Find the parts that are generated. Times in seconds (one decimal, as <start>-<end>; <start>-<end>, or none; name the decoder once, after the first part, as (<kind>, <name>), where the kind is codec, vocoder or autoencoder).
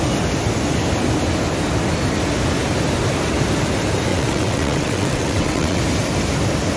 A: 4.1-5.8 (vocoder, WaveNeXt)